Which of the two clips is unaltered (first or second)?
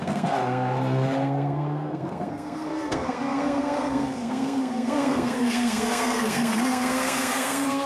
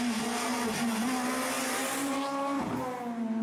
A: second